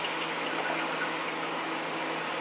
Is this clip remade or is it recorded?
recorded